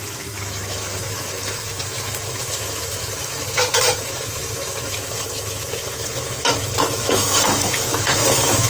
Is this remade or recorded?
remade